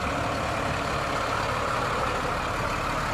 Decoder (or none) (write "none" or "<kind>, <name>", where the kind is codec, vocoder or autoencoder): none